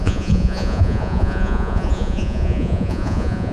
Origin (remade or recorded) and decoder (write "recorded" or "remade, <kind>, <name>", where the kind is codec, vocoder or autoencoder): remade, vocoder, Vocos